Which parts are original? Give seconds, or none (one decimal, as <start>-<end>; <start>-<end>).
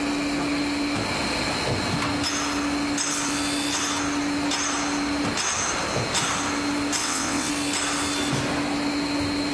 0.0-7.0; 7.5-9.5